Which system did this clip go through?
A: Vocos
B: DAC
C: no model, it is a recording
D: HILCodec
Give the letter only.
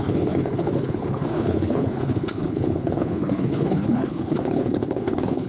D